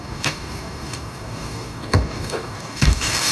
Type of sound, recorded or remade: remade